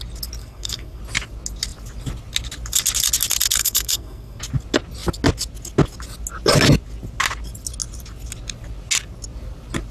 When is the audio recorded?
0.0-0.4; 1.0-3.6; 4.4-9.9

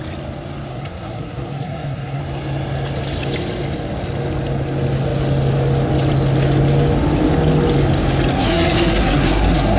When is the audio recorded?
0.0-0.7; 2.2-8.3

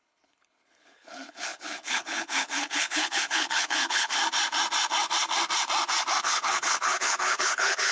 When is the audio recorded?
4.2-6.2

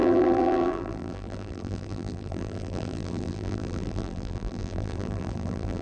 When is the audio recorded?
none

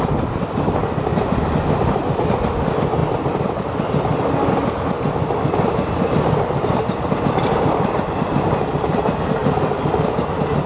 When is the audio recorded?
0.0-10.7

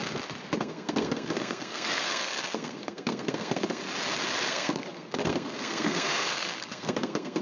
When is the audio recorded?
0.0-0.6; 3.8-4.5

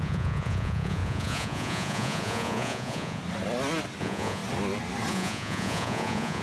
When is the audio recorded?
3.2-4.0; 4.4-5.1

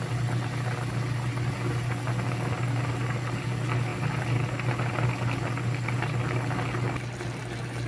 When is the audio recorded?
0.0-7.9